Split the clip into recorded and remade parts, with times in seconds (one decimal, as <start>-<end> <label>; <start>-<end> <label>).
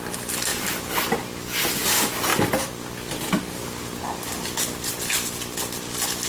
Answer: 0.0-6.3 recorded